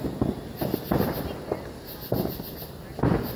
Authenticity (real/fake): real